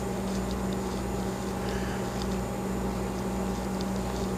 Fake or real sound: real